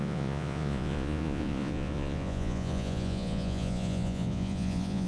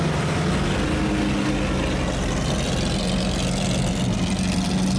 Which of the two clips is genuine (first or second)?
second